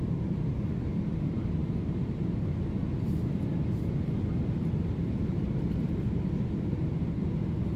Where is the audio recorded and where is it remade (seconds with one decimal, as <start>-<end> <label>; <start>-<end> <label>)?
0.0-7.8 recorded